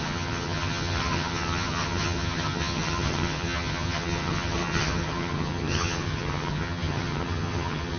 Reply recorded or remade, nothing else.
remade